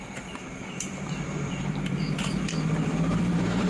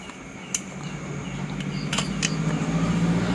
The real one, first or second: second